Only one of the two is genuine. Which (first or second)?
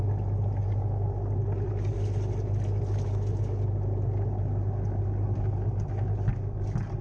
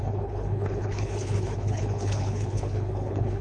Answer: first